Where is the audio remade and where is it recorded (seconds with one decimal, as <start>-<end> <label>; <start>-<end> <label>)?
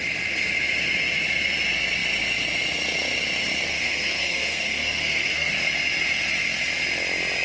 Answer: 0.0-3.7 recorded; 3.7-5.5 remade; 5.5-7.4 recorded